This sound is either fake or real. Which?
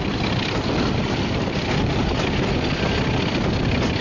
real